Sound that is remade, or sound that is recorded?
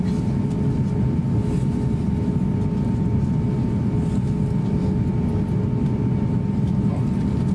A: recorded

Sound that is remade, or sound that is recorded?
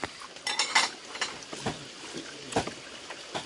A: recorded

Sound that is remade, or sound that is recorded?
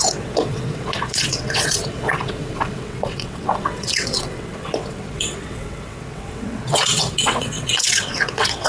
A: remade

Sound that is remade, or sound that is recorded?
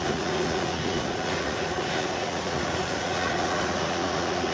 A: remade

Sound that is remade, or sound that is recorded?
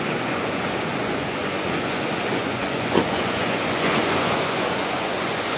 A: remade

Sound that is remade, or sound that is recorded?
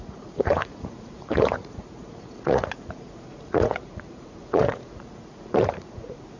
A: remade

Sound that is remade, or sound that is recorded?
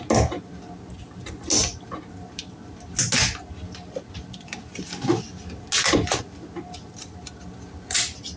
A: recorded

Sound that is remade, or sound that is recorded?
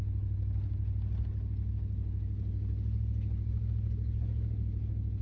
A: recorded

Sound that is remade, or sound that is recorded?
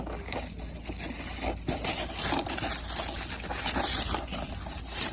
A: recorded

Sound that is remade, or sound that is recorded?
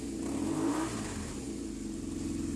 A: recorded